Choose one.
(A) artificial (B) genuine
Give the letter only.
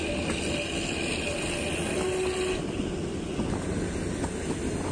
B